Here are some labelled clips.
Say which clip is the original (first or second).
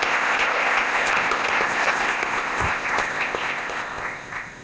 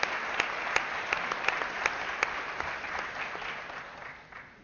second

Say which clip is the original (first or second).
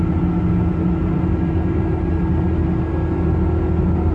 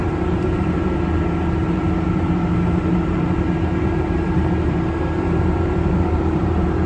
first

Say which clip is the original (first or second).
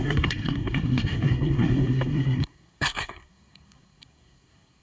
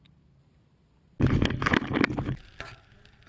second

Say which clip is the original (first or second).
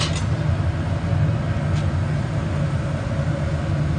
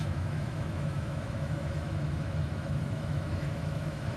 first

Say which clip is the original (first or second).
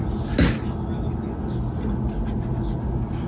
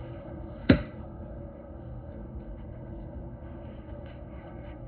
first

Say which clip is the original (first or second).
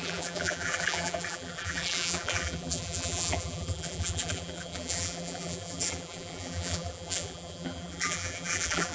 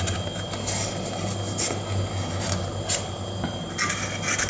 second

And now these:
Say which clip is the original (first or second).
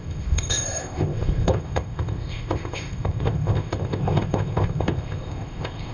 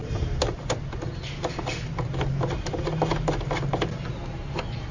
second